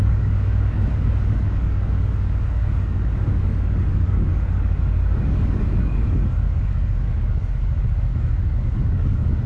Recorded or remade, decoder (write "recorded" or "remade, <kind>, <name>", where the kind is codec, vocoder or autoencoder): remade, codec, DAC